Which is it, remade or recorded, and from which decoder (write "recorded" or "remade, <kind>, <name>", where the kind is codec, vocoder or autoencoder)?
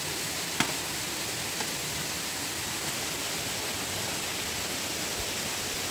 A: recorded